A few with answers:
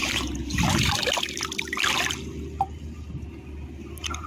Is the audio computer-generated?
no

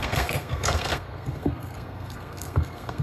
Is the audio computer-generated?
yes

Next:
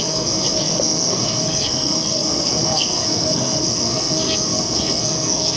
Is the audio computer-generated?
yes